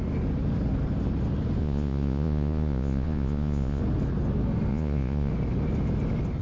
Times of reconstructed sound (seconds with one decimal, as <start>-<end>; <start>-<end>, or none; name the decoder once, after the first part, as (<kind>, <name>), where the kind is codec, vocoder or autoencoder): 1.6-3.8 (vocoder, Vocos); 4.7-5.3

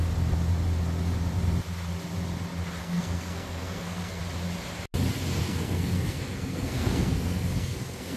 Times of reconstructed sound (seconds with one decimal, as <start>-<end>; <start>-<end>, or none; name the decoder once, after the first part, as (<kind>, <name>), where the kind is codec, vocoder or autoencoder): 2.8-4.2 (codec, SNAC); 5.4-8.2

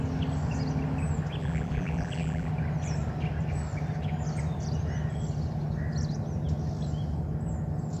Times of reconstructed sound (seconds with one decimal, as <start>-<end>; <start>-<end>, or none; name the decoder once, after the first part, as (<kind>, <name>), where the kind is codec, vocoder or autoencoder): 1.4-2.5 (vocoder, BigVGAN v2)